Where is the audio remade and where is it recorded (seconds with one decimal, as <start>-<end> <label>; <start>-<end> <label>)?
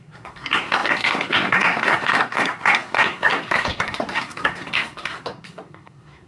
0.0-6.3 remade